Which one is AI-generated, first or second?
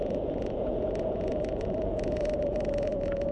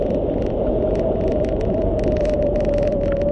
first